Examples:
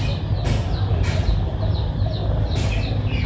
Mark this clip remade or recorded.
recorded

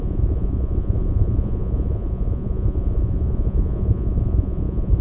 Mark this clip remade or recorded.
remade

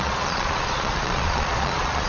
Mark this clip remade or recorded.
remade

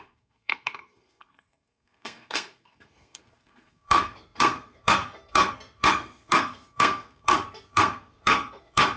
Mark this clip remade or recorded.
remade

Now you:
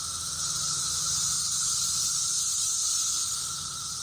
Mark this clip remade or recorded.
recorded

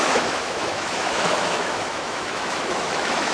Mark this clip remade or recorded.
remade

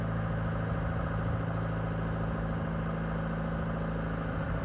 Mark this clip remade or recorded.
recorded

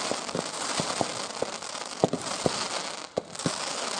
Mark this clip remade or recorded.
recorded